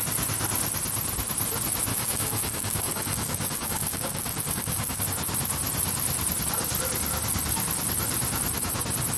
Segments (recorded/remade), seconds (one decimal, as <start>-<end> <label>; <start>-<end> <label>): 0.0-1.9 recorded; 1.9-5.0 remade; 5.0-9.2 recorded